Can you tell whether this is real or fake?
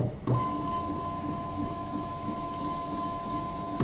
fake